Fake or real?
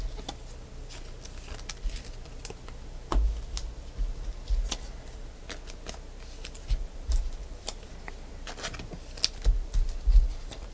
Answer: real